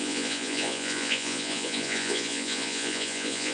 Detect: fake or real fake